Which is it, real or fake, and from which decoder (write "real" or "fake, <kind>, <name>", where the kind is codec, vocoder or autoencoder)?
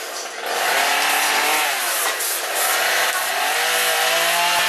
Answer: real